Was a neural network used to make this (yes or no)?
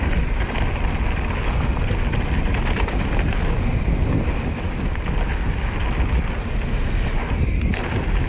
no